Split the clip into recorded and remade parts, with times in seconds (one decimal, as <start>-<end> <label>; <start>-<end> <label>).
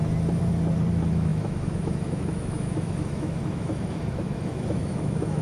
0.0-0.9 recorded; 0.9-5.4 remade